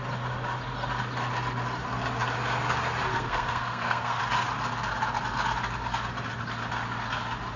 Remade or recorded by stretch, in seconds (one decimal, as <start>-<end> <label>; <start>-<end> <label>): 0.0-3.1 recorded; 3.1-4.2 remade; 4.2-7.6 recorded